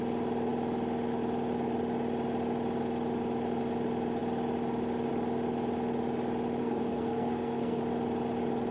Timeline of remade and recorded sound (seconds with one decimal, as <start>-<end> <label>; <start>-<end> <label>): 0.0-6.6 recorded; 6.6-7.8 remade; 7.8-8.7 recorded